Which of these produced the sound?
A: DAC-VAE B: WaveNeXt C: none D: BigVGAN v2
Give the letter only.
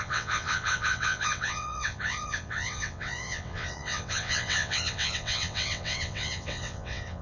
B